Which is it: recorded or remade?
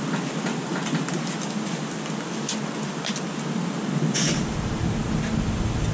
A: recorded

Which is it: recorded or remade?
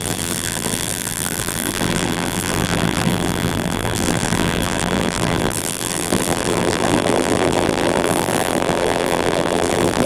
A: remade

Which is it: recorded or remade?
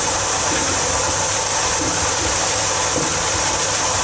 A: remade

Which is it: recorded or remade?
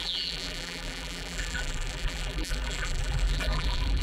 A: remade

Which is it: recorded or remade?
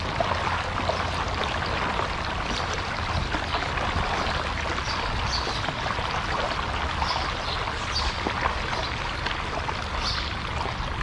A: recorded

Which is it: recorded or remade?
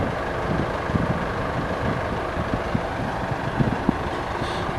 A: recorded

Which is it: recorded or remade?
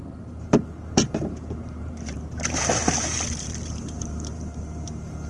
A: remade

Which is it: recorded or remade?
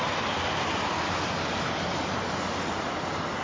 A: remade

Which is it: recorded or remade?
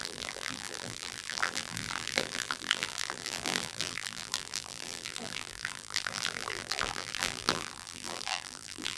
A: remade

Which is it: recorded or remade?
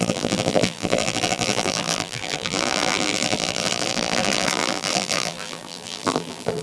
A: remade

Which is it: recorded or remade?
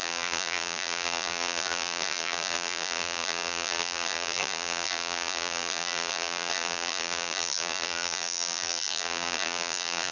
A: remade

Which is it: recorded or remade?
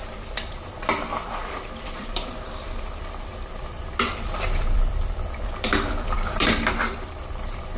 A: remade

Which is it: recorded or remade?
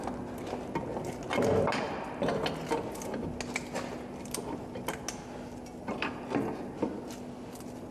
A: recorded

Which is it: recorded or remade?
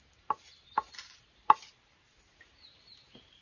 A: remade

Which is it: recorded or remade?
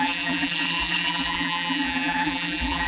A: remade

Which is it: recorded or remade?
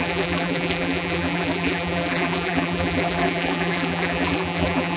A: remade